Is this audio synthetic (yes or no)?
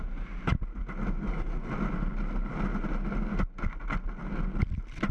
no